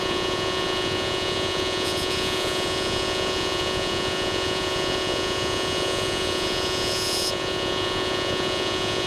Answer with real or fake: fake